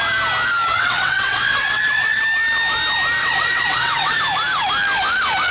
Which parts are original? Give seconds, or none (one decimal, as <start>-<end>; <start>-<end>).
0.0-0.7; 2.2-3.2; 4.2-5.5